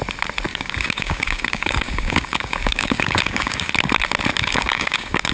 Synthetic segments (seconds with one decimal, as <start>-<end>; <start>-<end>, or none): 0.5-3.7; 4.4-5.3

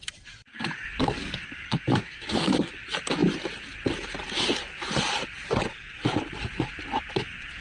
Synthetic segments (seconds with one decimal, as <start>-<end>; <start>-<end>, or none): 0.5-2.7

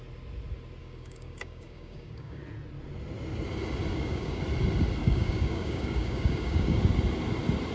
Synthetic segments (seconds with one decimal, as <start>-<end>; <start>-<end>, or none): 0.8-2.4; 3.9-4.4; 5.0-6.8

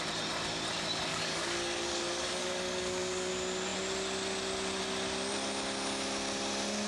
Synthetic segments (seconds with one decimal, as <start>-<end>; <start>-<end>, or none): 1.1-3.3

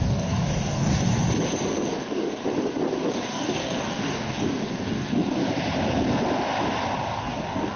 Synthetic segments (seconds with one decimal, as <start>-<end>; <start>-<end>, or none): 0.0-1.1; 1.9-2.4; 3.1-5.4; 7.2-7.8